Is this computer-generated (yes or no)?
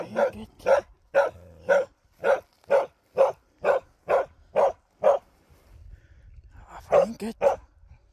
no